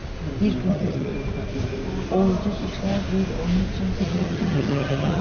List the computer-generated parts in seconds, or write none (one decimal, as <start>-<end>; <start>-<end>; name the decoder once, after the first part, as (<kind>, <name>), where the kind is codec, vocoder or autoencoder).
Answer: 0.7-1.1 (vocoder, HiFi-GAN); 4.0-5.2